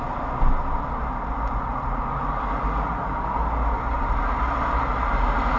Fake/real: real